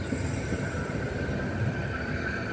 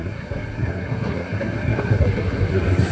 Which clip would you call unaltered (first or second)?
first